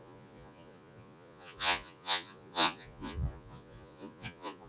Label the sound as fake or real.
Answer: fake